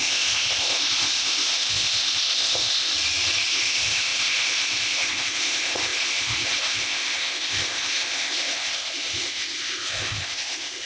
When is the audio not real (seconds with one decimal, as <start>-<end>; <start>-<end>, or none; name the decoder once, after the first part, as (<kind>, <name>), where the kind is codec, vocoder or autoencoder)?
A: 0.0-2.9 (codec, ZipCodec); 3.5-10.9